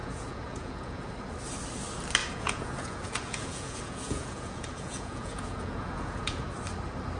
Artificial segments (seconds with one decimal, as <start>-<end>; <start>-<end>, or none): 0.0-1.1; 2.2-6.5